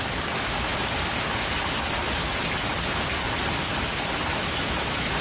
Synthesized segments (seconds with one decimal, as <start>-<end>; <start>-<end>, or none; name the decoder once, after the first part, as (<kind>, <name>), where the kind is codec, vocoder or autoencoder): 4.3-5.2 (autoencoder, DAC-VAE)